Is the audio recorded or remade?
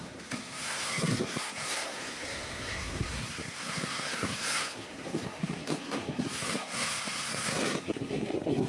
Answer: remade